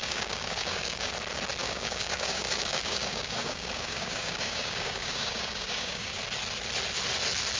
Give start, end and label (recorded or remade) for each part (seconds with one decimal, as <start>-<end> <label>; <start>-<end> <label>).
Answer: 0.0-1.1 remade; 1.1-1.6 recorded; 1.6-6.2 remade; 6.2-7.6 recorded